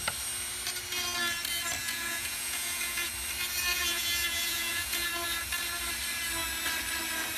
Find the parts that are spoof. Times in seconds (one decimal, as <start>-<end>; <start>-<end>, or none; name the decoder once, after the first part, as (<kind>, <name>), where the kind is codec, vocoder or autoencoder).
1.8-3.1 (vocoder, Vocos); 3.7-5.1